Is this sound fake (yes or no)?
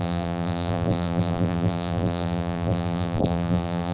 yes